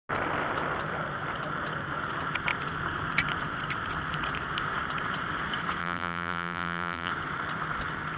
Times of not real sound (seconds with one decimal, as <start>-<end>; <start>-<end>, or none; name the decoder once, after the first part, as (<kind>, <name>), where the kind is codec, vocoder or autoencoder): 5.8-7.1 (vocoder, BigVGAN v2)